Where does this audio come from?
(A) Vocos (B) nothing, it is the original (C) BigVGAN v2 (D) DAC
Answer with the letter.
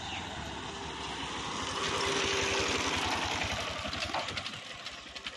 B